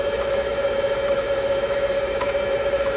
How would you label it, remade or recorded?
remade